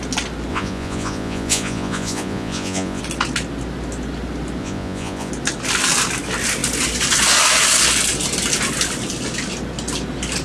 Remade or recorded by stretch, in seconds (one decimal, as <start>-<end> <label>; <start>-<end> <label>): 0.0-0.5 recorded; 0.5-3.0 remade; 3.0-4.6 recorded; 4.6-5.3 remade; 5.3-10.4 recorded